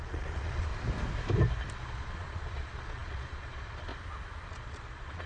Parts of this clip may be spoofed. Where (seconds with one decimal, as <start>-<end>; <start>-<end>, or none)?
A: 0.0-0.7; 1.8-3.9; 4.5-5.3